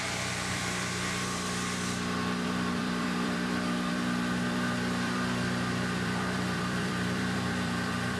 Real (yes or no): no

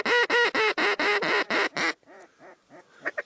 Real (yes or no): yes